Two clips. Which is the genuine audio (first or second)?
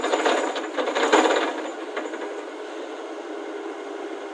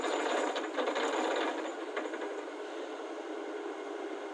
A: first